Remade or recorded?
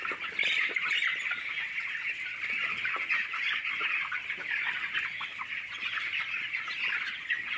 recorded